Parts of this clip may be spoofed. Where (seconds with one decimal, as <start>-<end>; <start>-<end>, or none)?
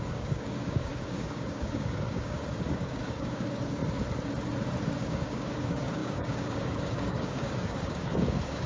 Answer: 0.0-3.8; 5.0-8.7